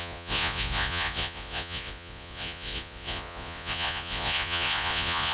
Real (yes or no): no